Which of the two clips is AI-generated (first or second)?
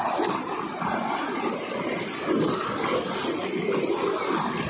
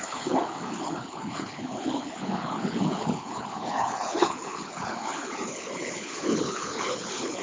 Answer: second